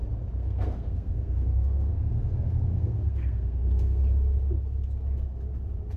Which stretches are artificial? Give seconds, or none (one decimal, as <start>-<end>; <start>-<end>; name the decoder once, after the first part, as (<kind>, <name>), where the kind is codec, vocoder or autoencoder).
0.4-4.0 (codec, SNAC)